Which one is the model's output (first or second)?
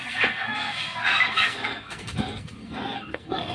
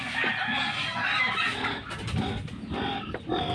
first